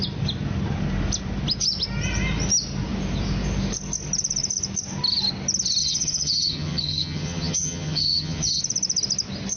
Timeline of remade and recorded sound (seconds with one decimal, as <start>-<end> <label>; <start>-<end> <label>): 0.0-5.8 recorded; 5.8-8.6 remade; 8.6-9.6 recorded